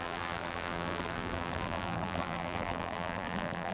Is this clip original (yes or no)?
no